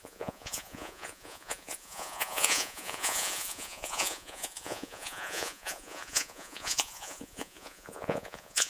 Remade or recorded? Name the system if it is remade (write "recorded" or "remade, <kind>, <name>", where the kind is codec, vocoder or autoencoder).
remade, vocoder, Vocos